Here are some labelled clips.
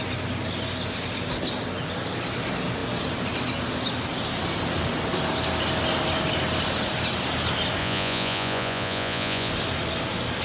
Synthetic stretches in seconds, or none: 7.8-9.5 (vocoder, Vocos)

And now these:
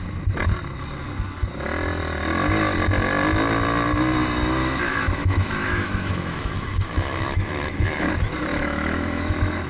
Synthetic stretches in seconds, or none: 4.6-8.1 (autoencoder, DAC-VAE); 8.5-9.7

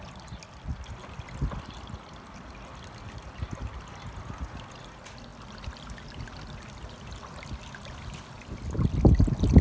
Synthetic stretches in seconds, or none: none

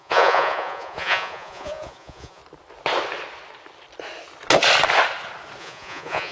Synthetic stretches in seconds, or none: 0.0-2.4 (vocoder, Vocos); 5.6-6.3

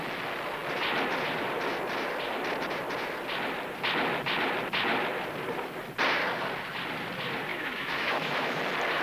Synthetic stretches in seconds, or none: 7.5-8.6 (autoencoder, DAC-VAE)

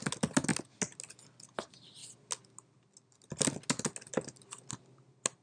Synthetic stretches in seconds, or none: none

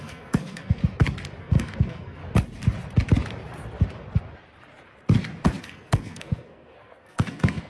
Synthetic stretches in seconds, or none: 0.0-0.8 (codec, SNAC); 1.4-2.2; 5.6-7.7